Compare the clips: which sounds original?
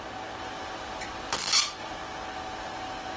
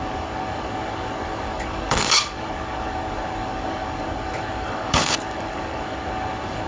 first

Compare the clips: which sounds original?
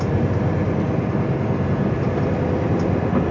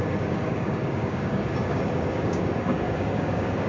first